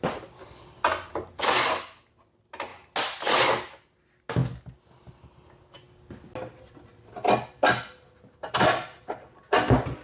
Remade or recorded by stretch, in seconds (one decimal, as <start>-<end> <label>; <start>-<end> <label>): 0.0-10.0 recorded